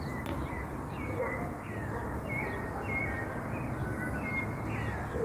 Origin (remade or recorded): recorded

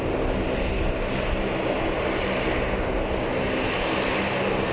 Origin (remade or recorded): recorded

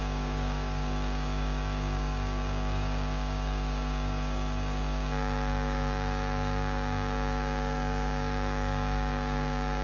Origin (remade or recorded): remade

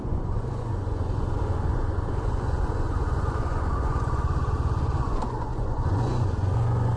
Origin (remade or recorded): remade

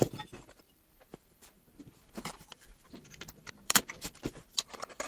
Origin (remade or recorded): remade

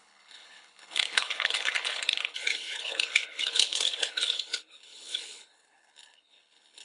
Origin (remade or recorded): remade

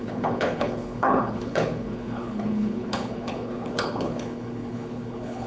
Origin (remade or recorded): remade